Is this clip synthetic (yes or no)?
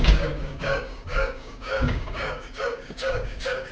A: yes